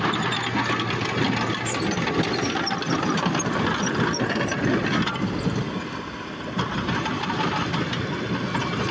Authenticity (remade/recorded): recorded